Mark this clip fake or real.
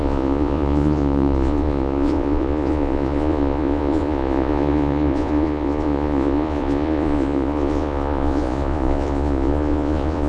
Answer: fake